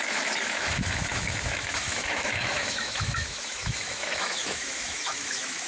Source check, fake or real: fake